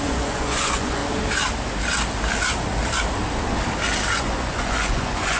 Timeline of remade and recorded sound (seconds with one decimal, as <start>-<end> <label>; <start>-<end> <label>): 0.0-1.0 remade; 1.0-4.2 recorded; 4.2-5.4 remade